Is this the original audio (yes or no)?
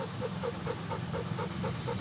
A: yes